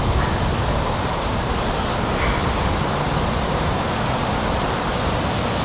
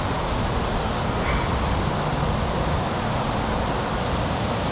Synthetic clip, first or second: first